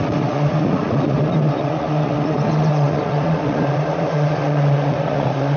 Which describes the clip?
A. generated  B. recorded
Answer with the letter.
A